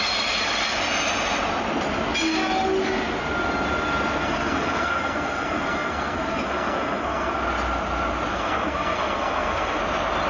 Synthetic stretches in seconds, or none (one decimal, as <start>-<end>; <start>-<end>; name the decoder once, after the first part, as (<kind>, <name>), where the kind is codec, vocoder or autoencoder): 4.2-7.4 (codec, SNAC); 8.3-9.8